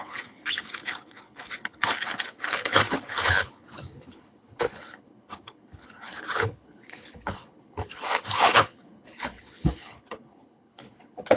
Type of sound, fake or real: fake